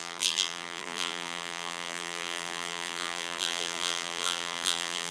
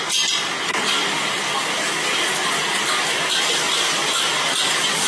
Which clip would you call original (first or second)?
second